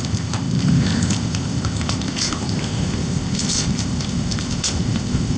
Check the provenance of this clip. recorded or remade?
remade